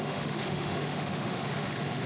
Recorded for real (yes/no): no